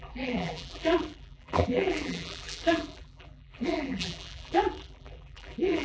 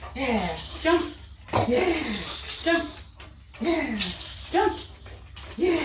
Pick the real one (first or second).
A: second